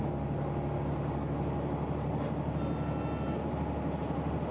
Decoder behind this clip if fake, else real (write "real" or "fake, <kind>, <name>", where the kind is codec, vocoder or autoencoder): real